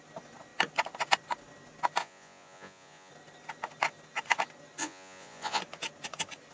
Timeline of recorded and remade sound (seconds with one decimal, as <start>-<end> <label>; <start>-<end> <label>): 0.0-2.0 recorded; 2.0-3.1 remade; 3.1-4.8 recorded; 4.8-5.6 remade; 5.6-6.5 recorded